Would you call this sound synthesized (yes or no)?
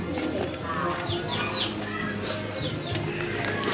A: no